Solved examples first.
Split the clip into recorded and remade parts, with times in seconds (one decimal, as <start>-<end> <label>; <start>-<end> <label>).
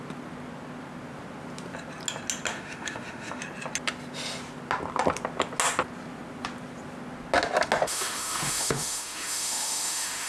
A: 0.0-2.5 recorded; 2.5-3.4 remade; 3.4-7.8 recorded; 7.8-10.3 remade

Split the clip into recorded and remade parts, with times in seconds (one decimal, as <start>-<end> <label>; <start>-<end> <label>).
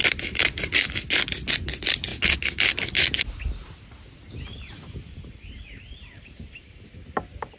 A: 0.0-7.6 recorded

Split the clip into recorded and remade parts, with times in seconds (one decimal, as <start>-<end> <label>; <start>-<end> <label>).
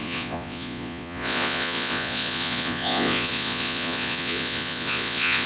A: 0.0-5.5 remade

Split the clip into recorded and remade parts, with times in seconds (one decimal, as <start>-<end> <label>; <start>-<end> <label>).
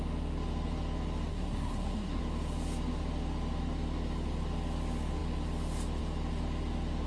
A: 0.0-1.3 recorded; 1.3-2.2 remade; 2.2-7.1 recorded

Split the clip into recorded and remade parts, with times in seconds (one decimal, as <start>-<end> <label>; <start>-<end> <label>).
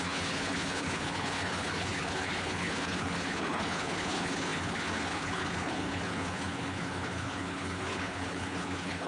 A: 0.0-9.1 remade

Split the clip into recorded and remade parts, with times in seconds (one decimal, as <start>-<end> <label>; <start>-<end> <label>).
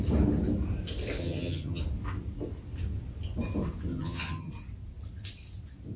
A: 0.0-1.2 recorded; 1.2-1.8 remade; 1.8-3.9 recorded; 3.9-4.5 remade; 4.5-6.0 recorded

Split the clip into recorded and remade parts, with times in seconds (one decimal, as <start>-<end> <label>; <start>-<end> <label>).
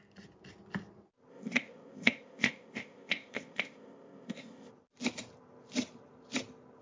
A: 0.0-1.3 recorded; 1.3-4.7 remade; 4.7-6.8 recorded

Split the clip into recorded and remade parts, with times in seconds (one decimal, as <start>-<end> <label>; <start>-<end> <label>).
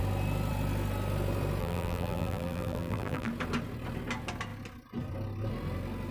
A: 0.0-1.6 recorded; 1.6-3.3 remade; 3.3-6.1 recorded